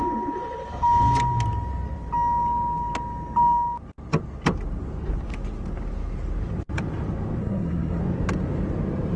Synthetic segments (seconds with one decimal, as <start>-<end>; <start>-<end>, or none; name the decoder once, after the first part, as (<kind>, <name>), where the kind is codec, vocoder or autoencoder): 7.4-8.0 (codec, SNAC)